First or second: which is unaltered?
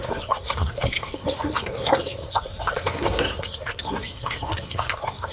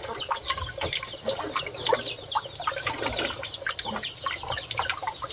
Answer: second